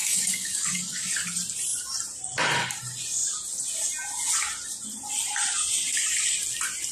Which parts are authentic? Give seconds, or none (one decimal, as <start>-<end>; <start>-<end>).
1.1-6.9